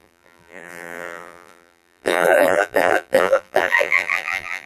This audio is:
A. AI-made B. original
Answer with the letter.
A